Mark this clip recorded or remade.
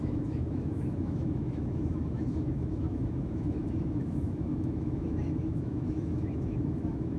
remade